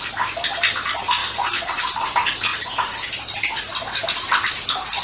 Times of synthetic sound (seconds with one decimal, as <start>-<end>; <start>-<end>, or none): none